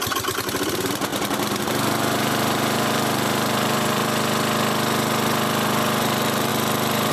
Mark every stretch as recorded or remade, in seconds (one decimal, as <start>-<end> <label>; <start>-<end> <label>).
0.0-4.0 remade; 4.0-6.0 recorded; 6.0-6.5 remade; 6.5-7.1 recorded